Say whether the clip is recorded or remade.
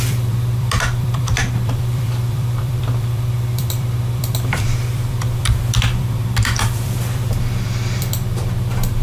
remade